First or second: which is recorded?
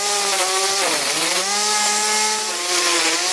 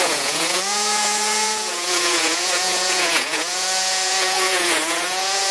first